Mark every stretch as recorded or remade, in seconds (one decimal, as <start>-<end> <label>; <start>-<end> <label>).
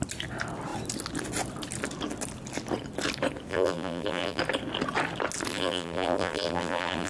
0.0-3.5 recorded; 3.5-4.4 remade; 4.4-5.5 recorded; 5.5-7.1 remade